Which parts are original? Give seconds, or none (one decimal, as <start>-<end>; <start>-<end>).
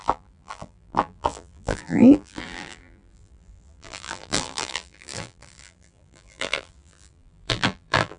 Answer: none